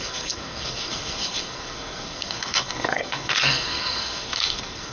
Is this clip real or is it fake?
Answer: fake